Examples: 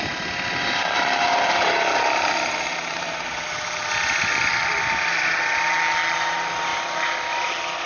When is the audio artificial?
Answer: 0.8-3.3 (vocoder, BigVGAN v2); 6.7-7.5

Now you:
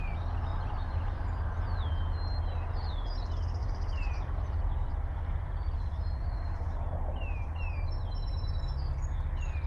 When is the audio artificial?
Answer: 0.5-1.9 (vocoder, BigVGAN v2); 3.6-8.6

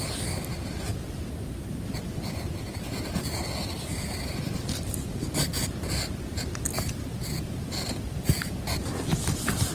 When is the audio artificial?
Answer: none

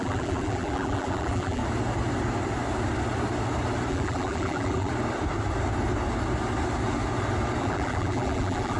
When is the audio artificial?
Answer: 0.0-1.6 (vocoder, BigVGAN v2); 3.9-4.9; 7.6-8.8

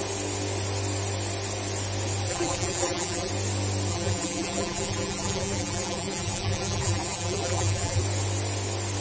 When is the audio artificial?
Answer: 2.3-3.3 (vocoder, BigVGAN v2); 3.9-8.0

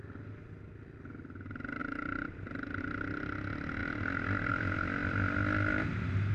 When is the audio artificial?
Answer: 1.8-2.8 (vocoder, BigVGAN v2); 3.8-4.5; 5.0-6.3